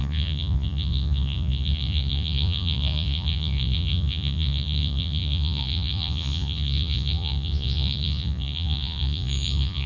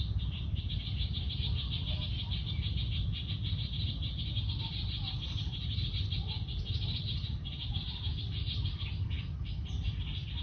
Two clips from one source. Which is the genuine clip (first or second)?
second